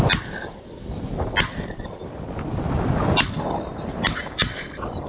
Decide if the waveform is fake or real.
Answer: real